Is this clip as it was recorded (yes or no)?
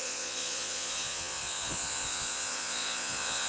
no